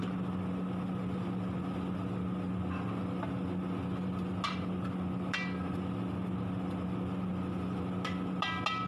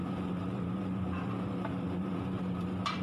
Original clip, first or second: first